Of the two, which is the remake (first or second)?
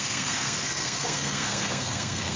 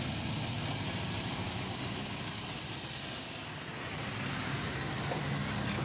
first